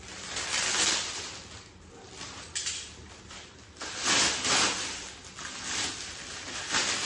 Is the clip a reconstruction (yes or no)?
no